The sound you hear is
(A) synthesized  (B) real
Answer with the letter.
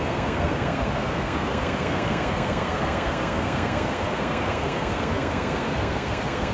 A